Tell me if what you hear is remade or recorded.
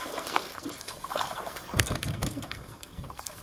remade